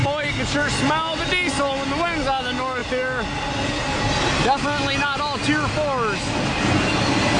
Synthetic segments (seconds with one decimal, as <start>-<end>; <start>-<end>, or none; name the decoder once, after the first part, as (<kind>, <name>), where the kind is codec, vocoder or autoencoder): none